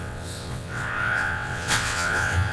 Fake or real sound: fake